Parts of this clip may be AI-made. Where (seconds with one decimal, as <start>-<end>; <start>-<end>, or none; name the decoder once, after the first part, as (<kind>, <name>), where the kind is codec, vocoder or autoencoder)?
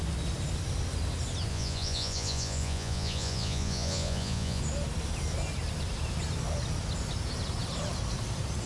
1.5-4.6 (vocoder, Vocos)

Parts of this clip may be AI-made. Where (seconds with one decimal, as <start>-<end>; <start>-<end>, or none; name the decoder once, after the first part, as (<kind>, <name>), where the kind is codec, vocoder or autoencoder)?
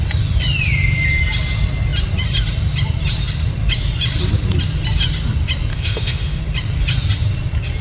5.7-6.4 (autoencoder, DAC-VAE)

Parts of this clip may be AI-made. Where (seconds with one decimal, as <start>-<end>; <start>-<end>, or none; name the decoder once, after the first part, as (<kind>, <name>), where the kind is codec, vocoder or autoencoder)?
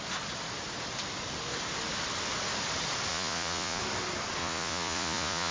3.1-3.8 (vocoder, Vocos); 4.4-5.5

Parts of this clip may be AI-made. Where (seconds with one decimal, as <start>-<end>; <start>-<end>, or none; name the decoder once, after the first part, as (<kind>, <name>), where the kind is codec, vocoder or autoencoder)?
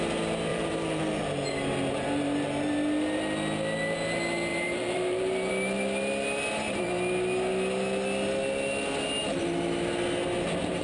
0.5-1.0 (vocoder, BigVGAN v2); 4.5-5.5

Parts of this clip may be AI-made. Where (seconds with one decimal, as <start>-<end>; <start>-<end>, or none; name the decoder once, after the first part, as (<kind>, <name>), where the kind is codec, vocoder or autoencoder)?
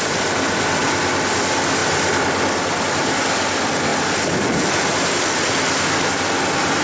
none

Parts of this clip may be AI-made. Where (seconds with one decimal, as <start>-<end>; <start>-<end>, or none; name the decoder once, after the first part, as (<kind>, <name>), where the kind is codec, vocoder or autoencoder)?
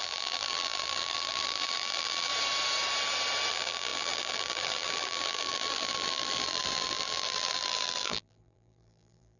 0.0-2.3 (vocoder, BigVGAN v2); 3.5-9.4